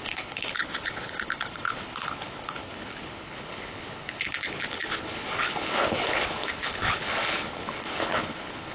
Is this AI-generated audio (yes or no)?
yes